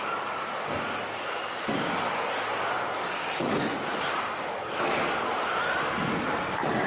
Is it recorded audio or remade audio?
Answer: recorded